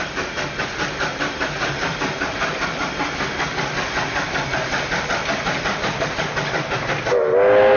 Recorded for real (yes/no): yes